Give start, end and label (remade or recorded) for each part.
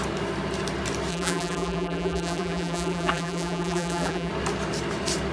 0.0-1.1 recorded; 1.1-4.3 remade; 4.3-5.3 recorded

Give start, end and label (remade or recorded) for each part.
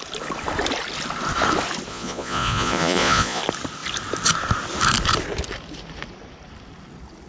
0.0-1.9 recorded; 1.9-3.4 remade; 3.4-7.3 recorded